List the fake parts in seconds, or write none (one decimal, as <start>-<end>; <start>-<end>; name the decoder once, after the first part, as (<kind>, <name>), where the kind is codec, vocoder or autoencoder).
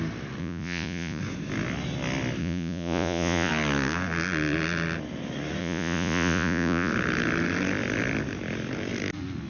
0.4-1.2 (vocoder, Vocos); 2.4-3.5; 5.6-6.9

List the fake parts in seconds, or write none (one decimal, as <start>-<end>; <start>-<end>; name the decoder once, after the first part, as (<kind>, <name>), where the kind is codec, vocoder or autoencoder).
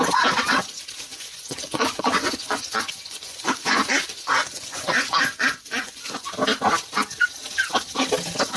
1.1-6.3 (vocoder, Vocos)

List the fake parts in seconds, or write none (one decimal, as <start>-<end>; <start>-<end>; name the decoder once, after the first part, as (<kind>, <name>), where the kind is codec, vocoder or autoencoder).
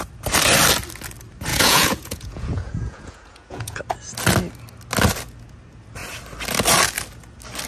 1.5-3.8 (vocoder, Vocos)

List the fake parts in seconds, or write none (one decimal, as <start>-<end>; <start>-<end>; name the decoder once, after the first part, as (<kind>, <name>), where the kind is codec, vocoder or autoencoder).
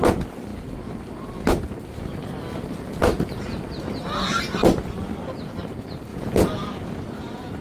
6.1-7.0 (vocoder, Vocos)